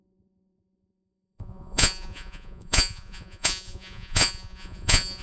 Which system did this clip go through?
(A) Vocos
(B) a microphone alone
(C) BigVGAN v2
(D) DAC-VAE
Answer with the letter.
A